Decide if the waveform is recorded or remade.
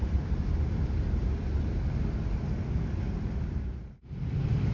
recorded